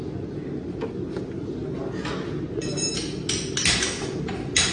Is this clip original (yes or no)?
yes